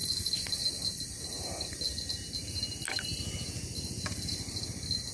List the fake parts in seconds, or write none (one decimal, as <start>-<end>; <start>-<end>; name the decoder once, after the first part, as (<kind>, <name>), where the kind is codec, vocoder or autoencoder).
2.4-4.6 (vocoder, BigVGAN v2)